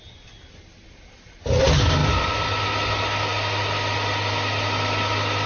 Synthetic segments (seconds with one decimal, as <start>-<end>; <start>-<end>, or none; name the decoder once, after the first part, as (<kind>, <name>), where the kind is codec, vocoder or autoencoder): none